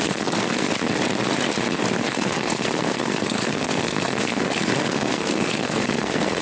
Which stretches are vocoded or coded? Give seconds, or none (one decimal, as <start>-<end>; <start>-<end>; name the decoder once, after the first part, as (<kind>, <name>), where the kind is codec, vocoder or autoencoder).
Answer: 0.0-0.7 (codec, SNAC); 2.1-6.4

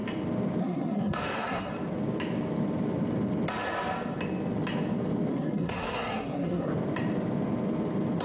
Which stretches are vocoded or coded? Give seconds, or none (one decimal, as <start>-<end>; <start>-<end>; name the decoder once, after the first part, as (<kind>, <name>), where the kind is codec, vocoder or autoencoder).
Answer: 0.6-1.7 (codec, SNAC); 5.3-6.7

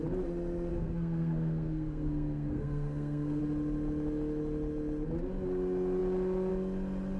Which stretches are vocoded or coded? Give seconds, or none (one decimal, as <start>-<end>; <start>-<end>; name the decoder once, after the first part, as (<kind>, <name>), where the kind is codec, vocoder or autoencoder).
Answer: 0.7-3.4 (codec, SNAC)

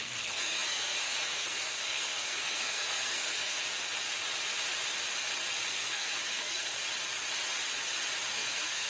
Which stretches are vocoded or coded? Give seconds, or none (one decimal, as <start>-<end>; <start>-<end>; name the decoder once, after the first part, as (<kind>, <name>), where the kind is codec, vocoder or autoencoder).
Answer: 0.0-3.6 (codec, SNAC); 5.7-6.8; 8.3-8.9

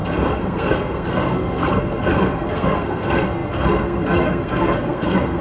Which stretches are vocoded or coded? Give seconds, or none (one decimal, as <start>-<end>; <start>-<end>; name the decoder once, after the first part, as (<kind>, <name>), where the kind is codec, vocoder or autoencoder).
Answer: 0.0-5.4 (codec, SNAC)

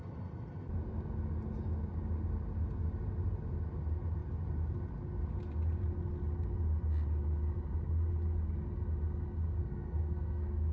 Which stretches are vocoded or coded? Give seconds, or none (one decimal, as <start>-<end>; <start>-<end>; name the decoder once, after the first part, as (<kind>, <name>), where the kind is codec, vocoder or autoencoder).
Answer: 9.6-10.7 (codec, SNAC)

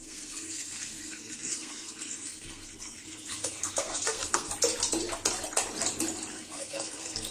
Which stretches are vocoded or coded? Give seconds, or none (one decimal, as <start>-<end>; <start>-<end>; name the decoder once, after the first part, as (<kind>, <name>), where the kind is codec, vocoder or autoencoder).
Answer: 0.0-4.5 (codec, SNAC); 6.3-7.3

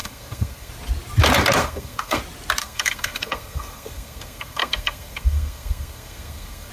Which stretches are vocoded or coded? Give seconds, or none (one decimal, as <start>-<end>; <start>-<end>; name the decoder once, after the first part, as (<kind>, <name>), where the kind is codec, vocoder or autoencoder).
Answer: 0.0-0.7 (codec, SNAC); 1.6-2.2; 2.6-6.7